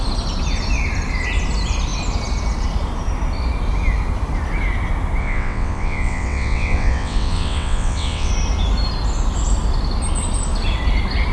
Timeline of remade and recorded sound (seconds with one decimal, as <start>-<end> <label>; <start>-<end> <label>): 0.0-5.2 recorded; 5.2-8.3 remade; 8.3-11.3 recorded